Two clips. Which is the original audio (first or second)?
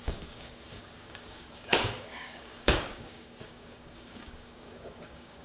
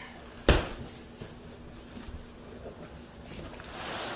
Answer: second